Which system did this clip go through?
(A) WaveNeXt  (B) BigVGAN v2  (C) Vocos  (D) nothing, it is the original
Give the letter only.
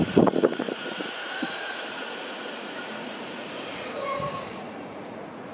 C